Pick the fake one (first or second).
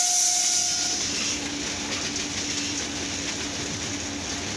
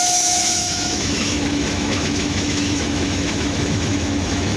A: second